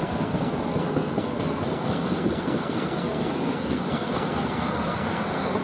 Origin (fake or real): fake